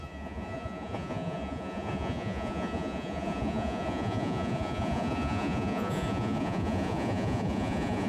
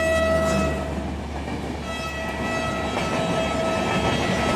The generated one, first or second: first